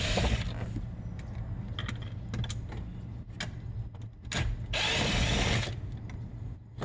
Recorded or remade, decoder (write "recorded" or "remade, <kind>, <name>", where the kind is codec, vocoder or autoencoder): recorded